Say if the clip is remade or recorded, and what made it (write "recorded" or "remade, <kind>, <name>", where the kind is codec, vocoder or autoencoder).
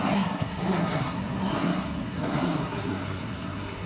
remade, codec, SNAC